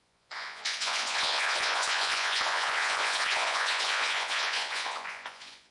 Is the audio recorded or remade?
remade